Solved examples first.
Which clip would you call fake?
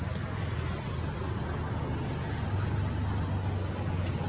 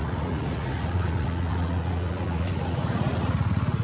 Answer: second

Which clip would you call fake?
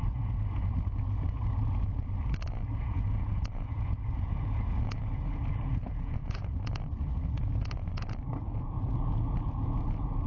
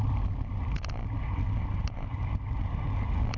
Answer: first